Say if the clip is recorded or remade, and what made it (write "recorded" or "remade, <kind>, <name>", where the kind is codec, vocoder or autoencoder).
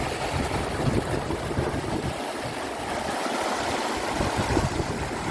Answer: recorded